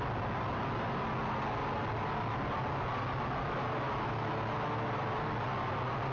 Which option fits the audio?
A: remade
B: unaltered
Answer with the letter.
B